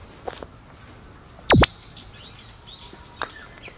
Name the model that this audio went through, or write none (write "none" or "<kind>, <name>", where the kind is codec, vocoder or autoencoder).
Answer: none